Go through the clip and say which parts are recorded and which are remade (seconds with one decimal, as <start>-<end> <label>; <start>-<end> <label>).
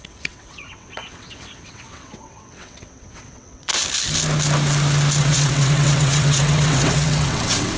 0.0-3.7 remade; 3.7-5.2 recorded; 5.2-7.8 remade